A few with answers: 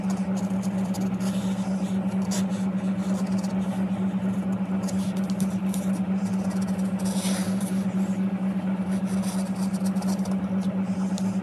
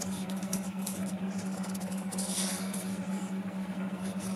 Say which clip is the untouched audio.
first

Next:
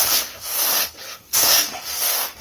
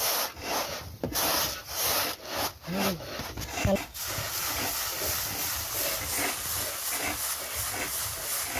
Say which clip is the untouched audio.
second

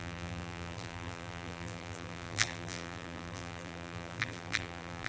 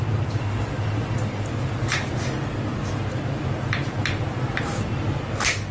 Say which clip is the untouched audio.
second